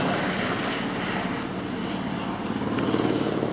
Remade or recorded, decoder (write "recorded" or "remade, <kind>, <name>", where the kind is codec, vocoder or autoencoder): recorded